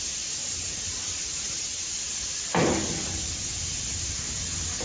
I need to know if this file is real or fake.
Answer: real